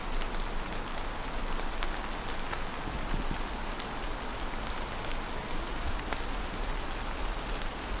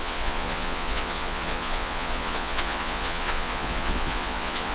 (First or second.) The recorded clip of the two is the first